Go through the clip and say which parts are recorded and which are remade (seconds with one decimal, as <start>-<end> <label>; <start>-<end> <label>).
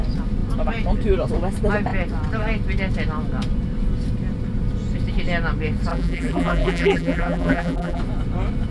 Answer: 0.0-5.9 recorded; 5.9-8.0 remade; 8.0-8.7 recorded